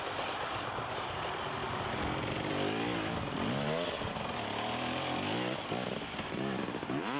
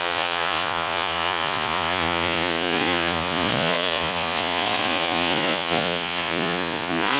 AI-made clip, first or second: second